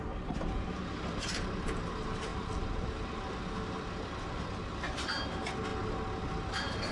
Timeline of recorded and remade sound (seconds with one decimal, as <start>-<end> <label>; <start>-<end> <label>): 0.0-6.9 recorded